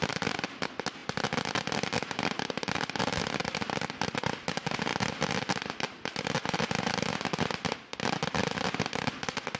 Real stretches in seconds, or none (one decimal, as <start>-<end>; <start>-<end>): 0.0-9.6